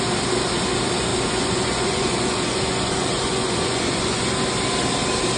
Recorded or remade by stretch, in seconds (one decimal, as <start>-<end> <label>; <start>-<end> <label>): 0.0-1.1 recorded; 1.1-4.3 remade; 4.3-5.4 recorded